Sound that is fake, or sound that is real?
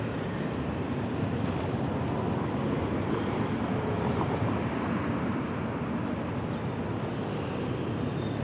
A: real